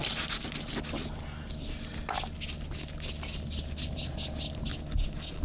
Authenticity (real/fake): real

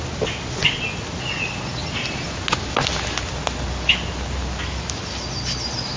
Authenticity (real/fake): real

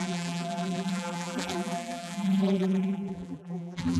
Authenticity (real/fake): fake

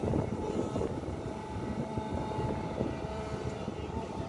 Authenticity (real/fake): fake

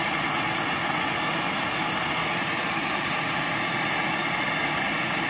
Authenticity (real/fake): real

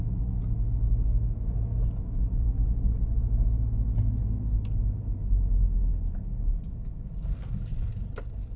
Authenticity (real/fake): real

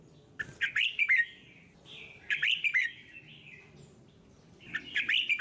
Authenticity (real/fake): real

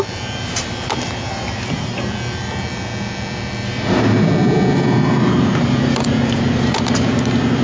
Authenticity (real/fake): fake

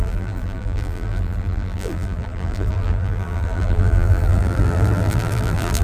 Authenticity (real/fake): fake